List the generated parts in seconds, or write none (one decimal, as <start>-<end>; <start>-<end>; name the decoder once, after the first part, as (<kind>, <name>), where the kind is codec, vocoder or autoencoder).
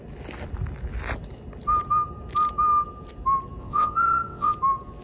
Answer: 3.6-4.5 (vocoder, WaveNeXt)